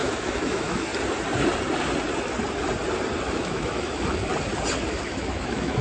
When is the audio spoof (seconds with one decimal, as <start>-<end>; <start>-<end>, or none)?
0.0-0.9; 3.3-4.3; 4.9-5.8